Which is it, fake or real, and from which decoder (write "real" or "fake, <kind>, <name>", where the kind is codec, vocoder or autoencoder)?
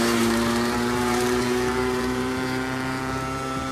fake, vocoder, BigVGAN v2